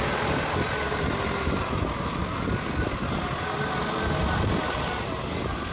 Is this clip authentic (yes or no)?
yes